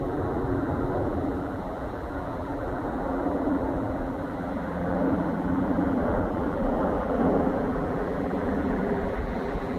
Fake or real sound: fake